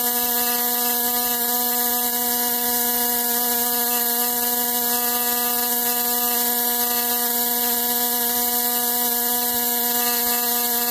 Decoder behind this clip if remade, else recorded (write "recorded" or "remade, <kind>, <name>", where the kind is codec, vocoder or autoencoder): recorded